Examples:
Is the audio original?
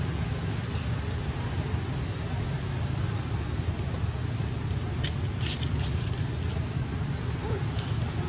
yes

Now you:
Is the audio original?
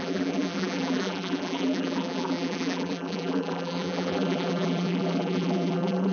no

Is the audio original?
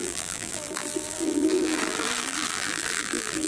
no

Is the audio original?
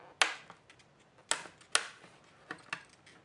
yes